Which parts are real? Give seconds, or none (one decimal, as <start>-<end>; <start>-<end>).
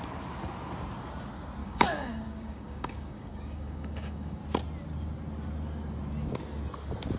0.0-1.6; 4.4-7.2